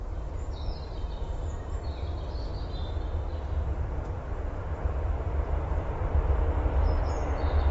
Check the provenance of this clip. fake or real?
fake